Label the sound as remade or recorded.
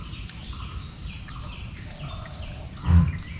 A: recorded